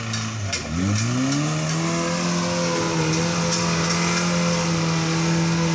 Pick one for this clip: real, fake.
real